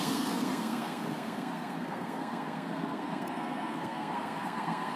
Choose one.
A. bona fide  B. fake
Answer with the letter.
B